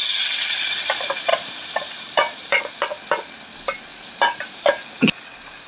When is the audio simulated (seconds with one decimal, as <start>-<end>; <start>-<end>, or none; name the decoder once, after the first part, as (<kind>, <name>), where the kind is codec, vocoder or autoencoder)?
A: 1.3-2.6 (vocoder, BigVGAN v2); 3.9-4.9